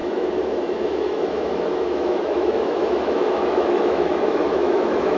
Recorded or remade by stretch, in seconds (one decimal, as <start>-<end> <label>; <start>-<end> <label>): 0.0-5.2 remade